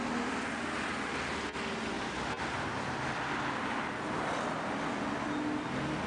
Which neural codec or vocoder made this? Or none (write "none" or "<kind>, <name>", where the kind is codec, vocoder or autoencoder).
none